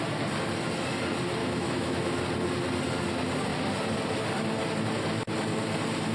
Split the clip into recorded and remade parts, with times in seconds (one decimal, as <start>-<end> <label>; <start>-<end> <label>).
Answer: 0.0-1.4 recorded; 1.4-2.2 remade; 2.2-6.1 recorded